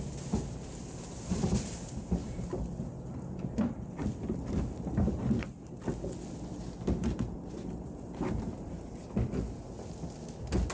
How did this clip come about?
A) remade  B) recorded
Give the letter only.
B